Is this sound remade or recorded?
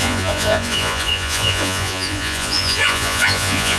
remade